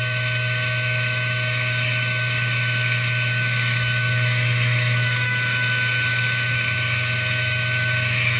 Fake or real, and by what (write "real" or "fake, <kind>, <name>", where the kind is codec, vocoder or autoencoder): fake, autoencoder, DAC-VAE